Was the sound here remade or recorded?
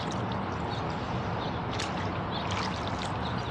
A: recorded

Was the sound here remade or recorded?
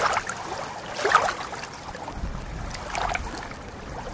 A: recorded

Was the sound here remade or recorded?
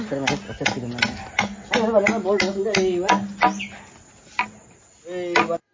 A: recorded